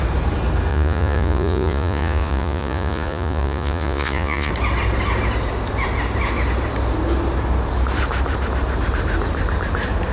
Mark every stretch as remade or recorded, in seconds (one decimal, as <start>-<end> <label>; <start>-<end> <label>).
0.0-0.7 recorded; 0.7-4.5 remade; 4.5-10.1 recorded